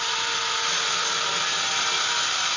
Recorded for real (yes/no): yes